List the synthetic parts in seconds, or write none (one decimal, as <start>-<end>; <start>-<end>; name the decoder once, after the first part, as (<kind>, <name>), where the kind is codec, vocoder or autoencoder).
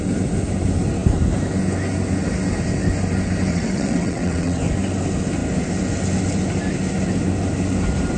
3.5-4.6 (vocoder, WaveNeXt)